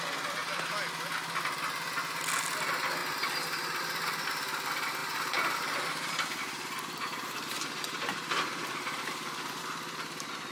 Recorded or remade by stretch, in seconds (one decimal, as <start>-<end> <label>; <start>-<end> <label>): 0.0-5.0 recorded; 5.0-9.6 remade; 9.6-10.5 recorded